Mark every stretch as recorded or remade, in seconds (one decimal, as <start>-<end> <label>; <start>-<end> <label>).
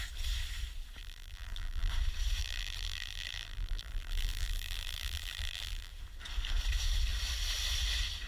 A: 0.0-1.0 recorded; 1.0-1.9 remade; 1.9-2.4 recorded; 2.4-5.9 remade; 5.9-8.3 recorded